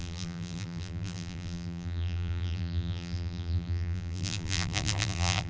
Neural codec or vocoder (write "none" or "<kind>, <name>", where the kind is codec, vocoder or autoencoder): vocoder, BigVGAN v2